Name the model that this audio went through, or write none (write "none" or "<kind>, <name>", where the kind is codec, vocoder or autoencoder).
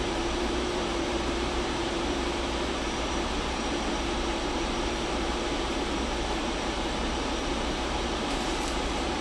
vocoder, BigVGAN v2